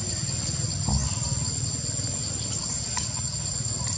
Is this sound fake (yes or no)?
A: no